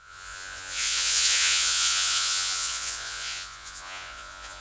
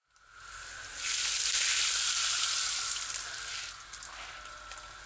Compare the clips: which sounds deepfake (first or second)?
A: first